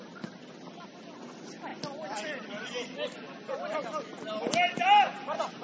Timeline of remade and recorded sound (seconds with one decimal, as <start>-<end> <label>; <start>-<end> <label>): 0.0-5.6 recorded